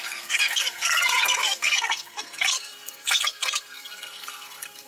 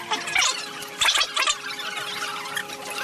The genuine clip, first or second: second